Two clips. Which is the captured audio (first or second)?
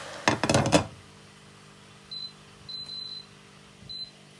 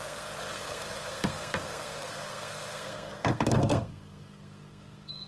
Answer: first